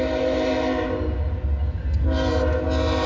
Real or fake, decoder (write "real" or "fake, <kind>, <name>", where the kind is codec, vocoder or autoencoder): real